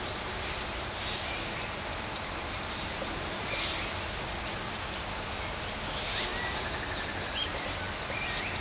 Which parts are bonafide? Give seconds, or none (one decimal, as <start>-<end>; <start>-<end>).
0.0-2.4; 3.5-8.6